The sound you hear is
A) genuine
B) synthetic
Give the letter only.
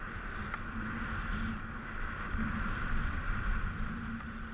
A